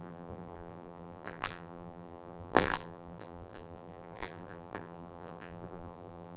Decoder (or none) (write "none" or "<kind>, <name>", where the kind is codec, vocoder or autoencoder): vocoder, BigVGAN v2